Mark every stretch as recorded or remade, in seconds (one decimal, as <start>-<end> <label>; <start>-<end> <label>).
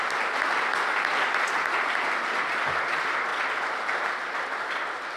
0.0-5.2 recorded